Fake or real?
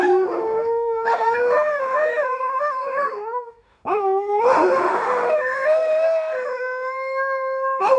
fake